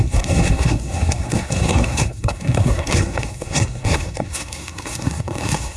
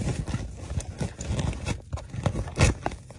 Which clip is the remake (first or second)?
first